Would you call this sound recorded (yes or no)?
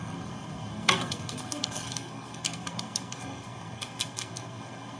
no